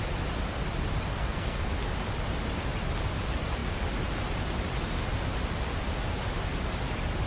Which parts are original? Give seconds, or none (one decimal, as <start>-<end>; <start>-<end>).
0.0-1.1; 1.7-7.3